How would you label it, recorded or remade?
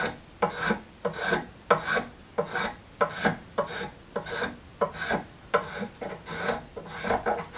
recorded